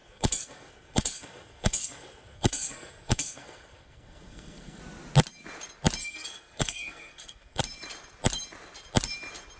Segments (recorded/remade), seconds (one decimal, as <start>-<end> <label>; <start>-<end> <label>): 0.0-4.8 remade; 4.8-6.0 recorded; 6.0-7.6 remade; 7.6-9.6 recorded